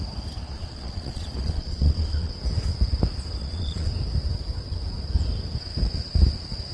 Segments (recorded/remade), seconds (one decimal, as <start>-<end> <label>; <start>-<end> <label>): 0.0-0.4 recorded; 0.4-2.3 remade; 2.3-3.4 recorded; 3.4-3.9 remade; 3.9-6.7 recorded